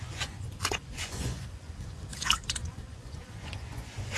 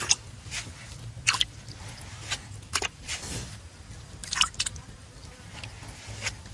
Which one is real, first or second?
second